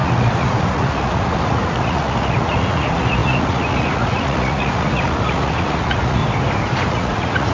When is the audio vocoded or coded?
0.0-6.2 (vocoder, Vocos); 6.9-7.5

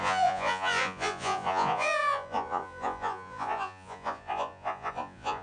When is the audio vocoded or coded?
0.0-5.4 (vocoder, Vocos)

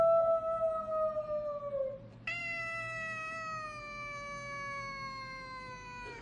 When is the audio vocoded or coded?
none

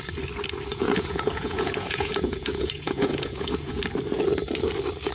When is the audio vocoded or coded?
0.7-3.8 (vocoder, Vocos)

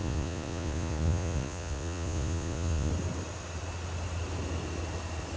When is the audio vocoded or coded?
0.0-2.9 (vocoder, Vocos)